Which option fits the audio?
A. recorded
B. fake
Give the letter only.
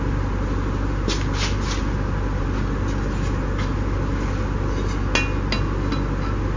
A